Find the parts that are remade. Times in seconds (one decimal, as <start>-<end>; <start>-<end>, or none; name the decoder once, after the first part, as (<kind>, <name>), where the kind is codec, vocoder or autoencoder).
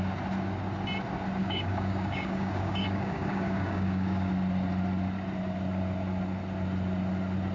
1.4-4.3 (codec, DAC)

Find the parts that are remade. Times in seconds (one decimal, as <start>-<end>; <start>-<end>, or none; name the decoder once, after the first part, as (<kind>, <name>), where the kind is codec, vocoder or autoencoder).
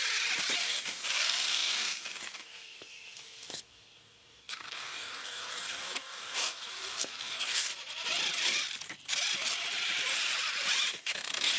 0.6-7.7 (codec, DAC); 10.9-11.6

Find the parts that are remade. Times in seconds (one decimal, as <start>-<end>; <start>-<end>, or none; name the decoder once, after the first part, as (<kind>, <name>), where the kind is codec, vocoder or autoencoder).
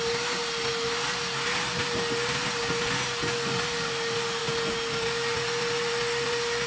none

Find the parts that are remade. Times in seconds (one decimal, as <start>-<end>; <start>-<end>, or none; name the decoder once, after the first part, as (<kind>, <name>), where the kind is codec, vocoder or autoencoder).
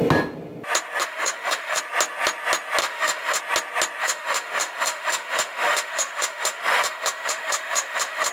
1.0-1.8 (autoencoder, DAC-VAE); 2.8-3.4; 4.0-8.3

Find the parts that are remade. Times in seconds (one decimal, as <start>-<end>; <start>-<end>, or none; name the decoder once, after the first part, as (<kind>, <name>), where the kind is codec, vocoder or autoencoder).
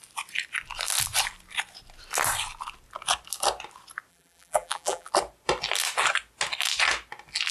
4.1-5.1 (vocoder, BigVGAN v2)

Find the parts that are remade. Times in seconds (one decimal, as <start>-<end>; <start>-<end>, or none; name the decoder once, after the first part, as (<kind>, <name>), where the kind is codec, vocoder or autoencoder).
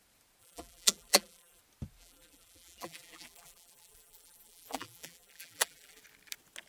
0.4-1.6 (vocoder, BigVGAN v2); 2.0-6.0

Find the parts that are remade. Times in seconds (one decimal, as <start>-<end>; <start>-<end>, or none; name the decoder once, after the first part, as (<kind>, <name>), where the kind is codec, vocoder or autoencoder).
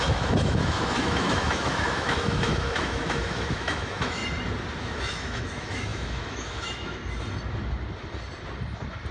0.0-4.2 (autoencoder, DAC-VAE); 4.8-7.0